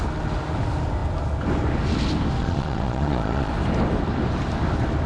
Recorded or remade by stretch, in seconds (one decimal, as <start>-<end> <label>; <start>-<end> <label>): 0.0-2.4 recorded; 2.4-3.5 remade; 3.5-5.1 recorded